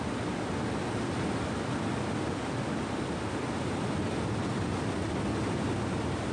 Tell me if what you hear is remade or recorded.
recorded